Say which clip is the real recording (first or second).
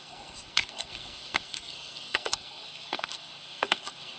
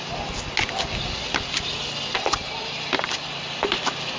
second